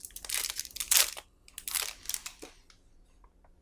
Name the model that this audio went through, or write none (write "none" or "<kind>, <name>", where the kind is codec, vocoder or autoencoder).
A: none